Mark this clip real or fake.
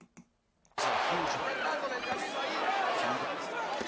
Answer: real